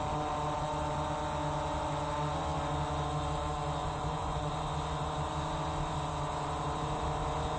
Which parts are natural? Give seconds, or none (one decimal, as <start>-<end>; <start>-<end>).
0.0-3.8; 4.5-7.6